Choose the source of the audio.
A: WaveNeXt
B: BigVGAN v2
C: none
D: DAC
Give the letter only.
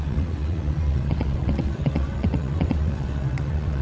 A